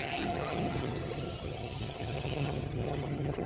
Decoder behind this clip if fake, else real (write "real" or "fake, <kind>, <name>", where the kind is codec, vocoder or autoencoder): fake, vocoder, HiFi-GAN